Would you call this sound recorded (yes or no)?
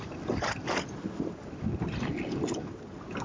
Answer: yes